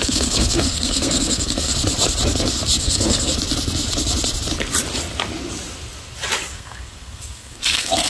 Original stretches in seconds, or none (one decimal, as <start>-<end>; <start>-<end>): 1.7-2.8; 3.3-6.5